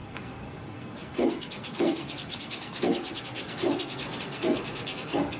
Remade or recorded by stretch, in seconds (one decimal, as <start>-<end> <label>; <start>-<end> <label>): 0.0-5.4 remade